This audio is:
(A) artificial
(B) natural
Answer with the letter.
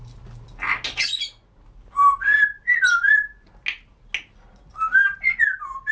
B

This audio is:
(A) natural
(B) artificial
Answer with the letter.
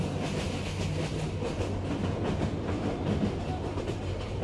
A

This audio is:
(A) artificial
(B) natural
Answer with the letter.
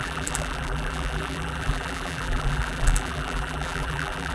A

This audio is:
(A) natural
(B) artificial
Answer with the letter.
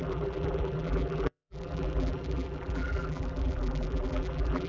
B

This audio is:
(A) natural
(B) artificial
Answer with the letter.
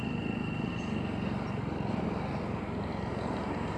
A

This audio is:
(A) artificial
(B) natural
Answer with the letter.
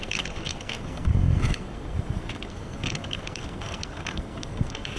A